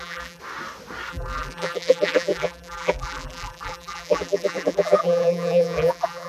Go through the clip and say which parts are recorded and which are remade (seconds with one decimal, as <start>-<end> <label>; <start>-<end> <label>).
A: 0.0-0.4 remade; 0.4-1.1 recorded; 1.1-6.3 remade